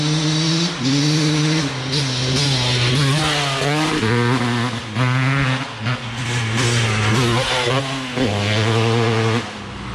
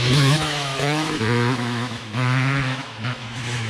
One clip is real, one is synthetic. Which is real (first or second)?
first